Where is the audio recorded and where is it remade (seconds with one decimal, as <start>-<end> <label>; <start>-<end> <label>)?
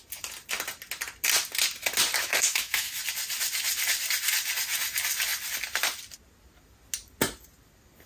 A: 0.0-2.2 recorded; 2.2-3.0 remade; 3.0-8.1 recorded